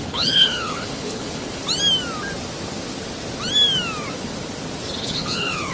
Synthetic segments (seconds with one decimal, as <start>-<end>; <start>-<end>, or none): 0.0-1.6; 5.0-5.7

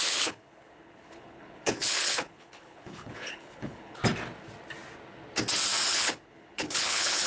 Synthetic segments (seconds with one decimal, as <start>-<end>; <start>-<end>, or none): 0.0-4.0; 5.9-7.3

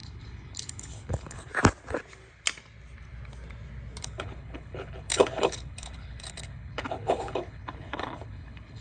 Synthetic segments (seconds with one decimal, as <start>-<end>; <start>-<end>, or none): 0.0-1.5; 4.0-8.8

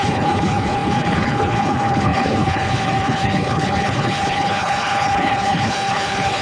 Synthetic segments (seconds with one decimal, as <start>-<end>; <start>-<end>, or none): 0.0-6.4

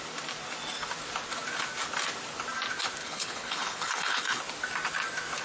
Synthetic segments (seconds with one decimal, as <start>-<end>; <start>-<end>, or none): 3.0-4.4